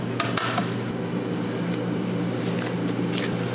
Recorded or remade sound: recorded